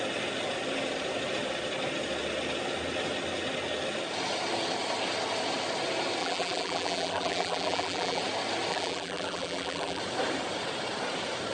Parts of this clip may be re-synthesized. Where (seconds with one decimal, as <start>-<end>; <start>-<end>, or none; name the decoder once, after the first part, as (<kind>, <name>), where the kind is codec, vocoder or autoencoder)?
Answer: 6.2-8.2 (vocoder, BigVGAN v2); 8.7-10.0